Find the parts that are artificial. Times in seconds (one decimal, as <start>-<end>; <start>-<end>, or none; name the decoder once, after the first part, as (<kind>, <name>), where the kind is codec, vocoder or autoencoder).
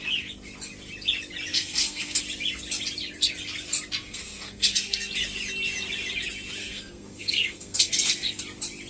1.5-2.2 (codec, SNAC); 4.0-5.1; 6.6-8.4